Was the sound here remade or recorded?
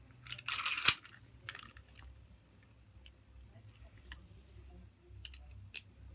recorded